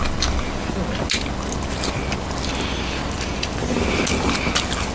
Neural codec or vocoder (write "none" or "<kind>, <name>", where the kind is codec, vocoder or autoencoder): none